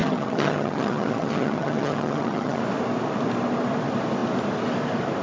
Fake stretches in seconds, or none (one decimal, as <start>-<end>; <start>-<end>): 0.0-2.6